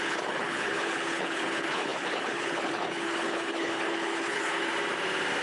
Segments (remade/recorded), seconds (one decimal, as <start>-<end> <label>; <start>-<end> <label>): 0.0-4.7 remade; 4.7-5.4 recorded